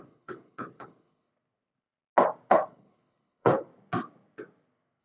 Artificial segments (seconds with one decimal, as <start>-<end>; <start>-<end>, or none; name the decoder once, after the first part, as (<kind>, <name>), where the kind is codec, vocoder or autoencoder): 0.0-1.3 (codec, HILCodec); 2.5-3.7